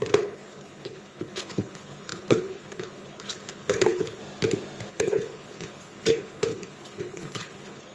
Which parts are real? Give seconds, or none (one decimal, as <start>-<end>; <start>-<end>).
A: 4.2-4.9